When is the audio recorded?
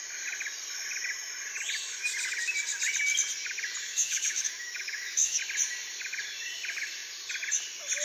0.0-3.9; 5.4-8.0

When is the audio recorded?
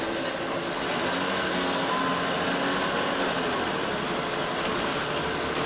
0.0-1.3; 1.9-5.7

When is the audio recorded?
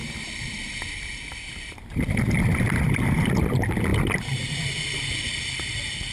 0.0-6.1